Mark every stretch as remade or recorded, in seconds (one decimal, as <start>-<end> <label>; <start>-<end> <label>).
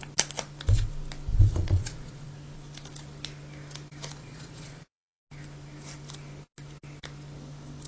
0.0-1.3 recorded; 1.3-2.3 remade; 2.3-4.2 recorded; 4.2-5.2 remade; 5.2-7.9 recorded